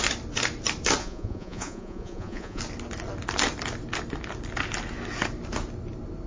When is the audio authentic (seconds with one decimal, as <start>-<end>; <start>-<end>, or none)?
0.0-1.0; 2.6-6.3